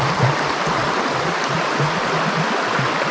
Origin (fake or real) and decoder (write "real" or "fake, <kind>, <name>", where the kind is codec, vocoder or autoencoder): real